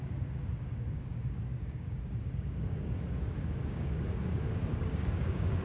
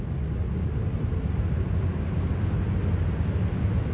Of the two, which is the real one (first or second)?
second